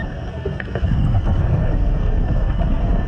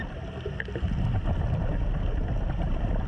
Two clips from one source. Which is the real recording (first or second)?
second